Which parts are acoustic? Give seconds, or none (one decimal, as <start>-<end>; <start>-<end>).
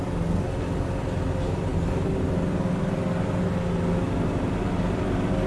0.0-5.5